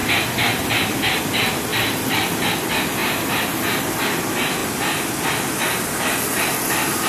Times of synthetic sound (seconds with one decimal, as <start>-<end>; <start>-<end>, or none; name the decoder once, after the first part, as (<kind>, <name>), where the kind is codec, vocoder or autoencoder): 0.0-1.2 (vocoder, BigVGAN v2); 3.0-3.8; 4.6-5.5